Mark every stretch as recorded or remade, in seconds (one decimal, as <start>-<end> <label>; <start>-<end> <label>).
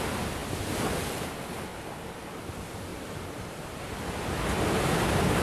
0.0-1.7 recorded; 1.7-2.5 remade; 2.5-2.9 recorded; 2.9-3.9 remade; 3.9-5.4 recorded